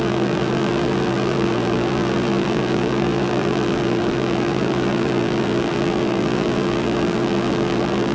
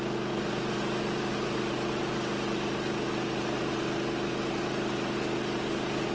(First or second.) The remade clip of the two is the first